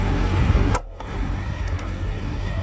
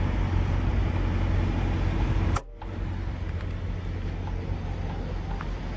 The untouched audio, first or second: second